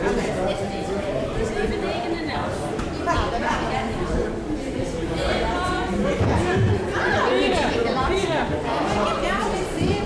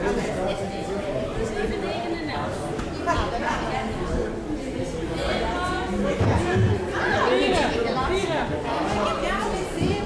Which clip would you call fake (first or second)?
first